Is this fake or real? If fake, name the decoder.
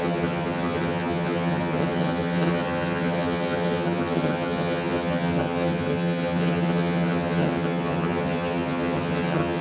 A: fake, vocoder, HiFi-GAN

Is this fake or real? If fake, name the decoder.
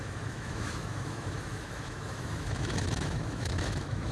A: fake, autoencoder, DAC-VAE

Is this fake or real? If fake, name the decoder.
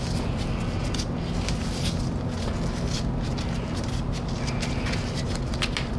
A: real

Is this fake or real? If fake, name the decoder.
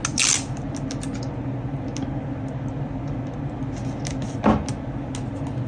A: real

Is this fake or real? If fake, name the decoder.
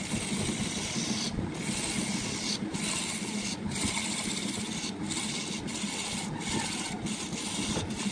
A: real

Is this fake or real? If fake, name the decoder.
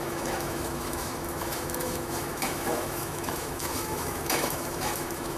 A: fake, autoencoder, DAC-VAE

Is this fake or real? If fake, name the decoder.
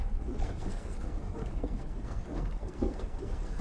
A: fake, codec, SNAC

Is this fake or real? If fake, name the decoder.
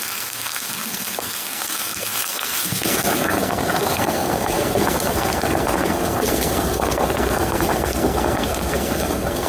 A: fake, codec, SNAC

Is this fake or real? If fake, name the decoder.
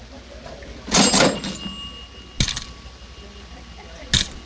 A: real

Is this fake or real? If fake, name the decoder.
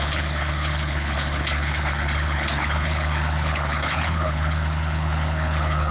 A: fake, codec, HILCodec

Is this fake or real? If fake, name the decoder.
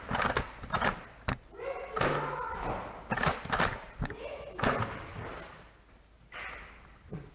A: real